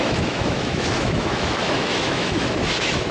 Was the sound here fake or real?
fake